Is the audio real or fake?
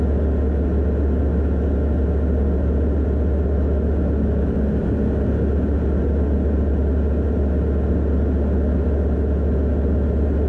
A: real